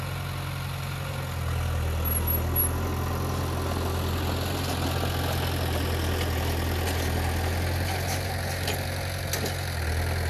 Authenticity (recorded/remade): recorded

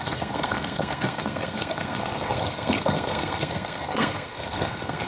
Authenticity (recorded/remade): remade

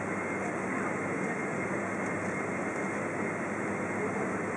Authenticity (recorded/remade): recorded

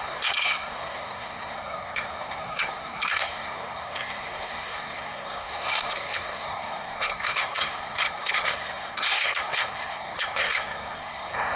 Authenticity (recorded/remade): remade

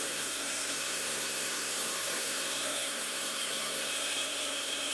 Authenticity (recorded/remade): remade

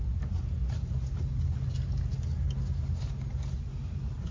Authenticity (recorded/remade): recorded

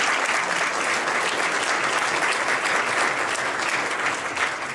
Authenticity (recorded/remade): recorded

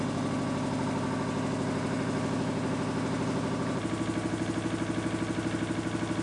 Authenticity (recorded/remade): recorded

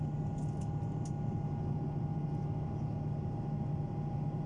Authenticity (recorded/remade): recorded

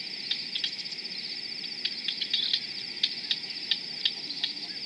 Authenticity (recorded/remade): recorded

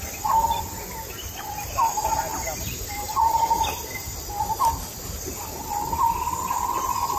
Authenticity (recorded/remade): recorded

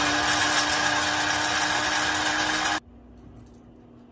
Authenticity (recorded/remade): recorded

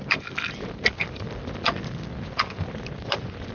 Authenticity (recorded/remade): recorded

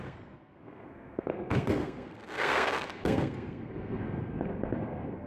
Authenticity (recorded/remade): remade